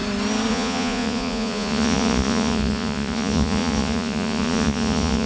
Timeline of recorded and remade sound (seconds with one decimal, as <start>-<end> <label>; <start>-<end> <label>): 0.0-0.5 recorded; 0.5-5.3 remade